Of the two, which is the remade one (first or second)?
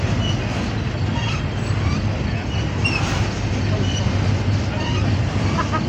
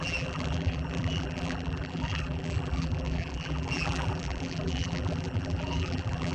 second